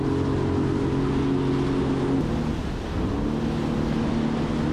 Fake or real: real